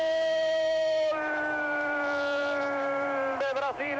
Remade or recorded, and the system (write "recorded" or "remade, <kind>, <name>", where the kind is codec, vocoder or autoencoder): remade, autoencoder, DAC-VAE